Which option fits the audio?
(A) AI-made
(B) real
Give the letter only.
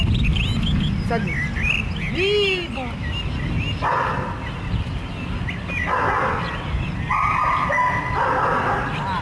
B